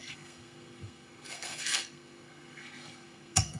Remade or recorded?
remade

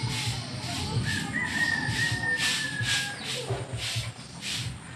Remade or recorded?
recorded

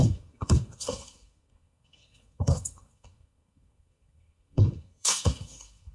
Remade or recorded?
remade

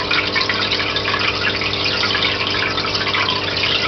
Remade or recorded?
recorded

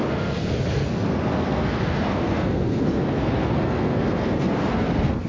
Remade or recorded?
remade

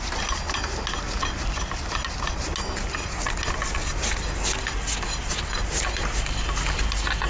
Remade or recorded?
recorded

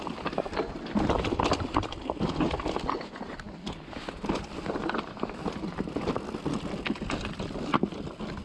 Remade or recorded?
recorded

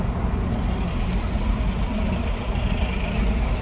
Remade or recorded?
recorded